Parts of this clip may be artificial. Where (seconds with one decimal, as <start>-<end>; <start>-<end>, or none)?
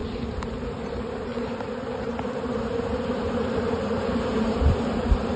0.0-1.3; 2.0-5.4